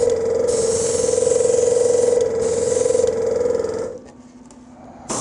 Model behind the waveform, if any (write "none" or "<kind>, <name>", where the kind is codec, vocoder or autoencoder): none